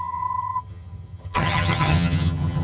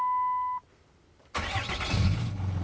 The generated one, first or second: first